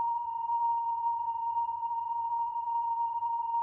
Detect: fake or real fake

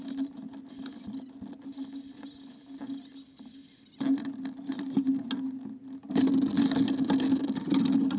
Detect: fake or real real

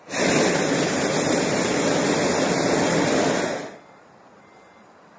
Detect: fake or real real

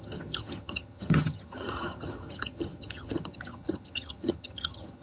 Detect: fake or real fake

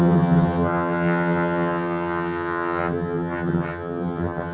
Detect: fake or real fake